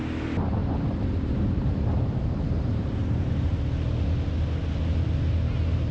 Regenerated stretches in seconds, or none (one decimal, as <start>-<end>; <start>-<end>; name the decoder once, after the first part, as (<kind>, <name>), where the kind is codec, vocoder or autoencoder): 0.6-3.3 (vocoder, BigVGAN v2)